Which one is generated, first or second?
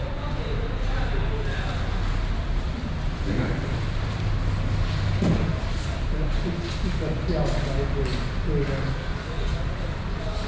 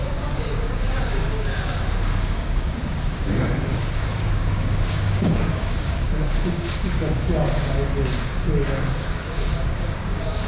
second